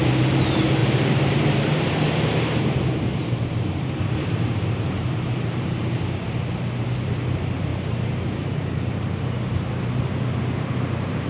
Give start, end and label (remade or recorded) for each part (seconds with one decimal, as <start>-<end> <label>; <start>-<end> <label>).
0.0-0.8 recorded; 0.8-2.6 remade; 2.6-3.1 recorded; 3.1-6.3 remade; 6.3-7.7 recorded; 7.7-9.1 remade; 9.1-11.3 recorded